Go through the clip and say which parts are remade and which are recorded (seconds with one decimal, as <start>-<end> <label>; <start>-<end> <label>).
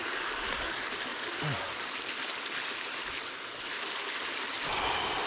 0.0-5.3 recorded